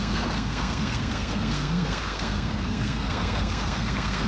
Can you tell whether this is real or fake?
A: fake